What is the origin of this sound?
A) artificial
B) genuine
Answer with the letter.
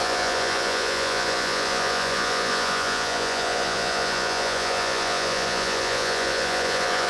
A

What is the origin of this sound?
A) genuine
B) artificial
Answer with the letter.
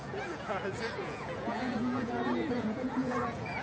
B